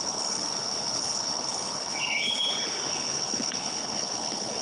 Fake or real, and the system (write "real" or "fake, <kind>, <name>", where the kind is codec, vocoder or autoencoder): fake, codec, HILCodec